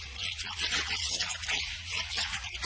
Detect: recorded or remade remade